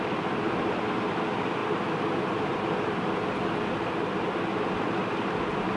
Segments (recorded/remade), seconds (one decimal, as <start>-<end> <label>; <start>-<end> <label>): 0.0-5.8 recorded